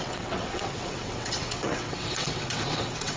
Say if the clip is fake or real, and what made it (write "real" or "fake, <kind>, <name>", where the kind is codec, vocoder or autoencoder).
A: fake, vocoder, WaveNeXt